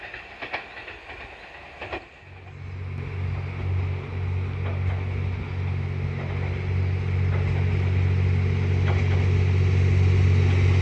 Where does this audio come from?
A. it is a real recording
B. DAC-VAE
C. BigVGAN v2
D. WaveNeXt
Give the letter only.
A